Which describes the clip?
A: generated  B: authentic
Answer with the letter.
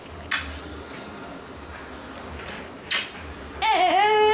B